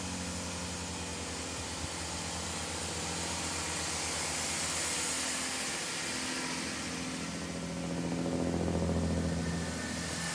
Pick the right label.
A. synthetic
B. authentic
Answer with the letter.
B